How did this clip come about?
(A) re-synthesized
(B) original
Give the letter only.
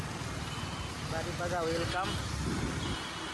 B